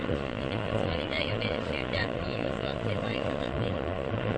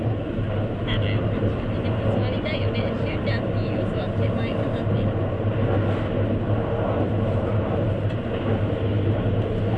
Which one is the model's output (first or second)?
first